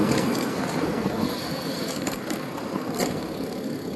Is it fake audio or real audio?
fake